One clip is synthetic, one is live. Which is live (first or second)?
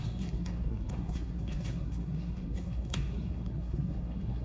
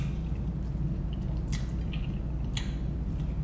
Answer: second